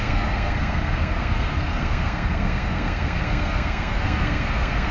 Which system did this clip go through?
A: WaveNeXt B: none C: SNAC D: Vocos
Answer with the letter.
C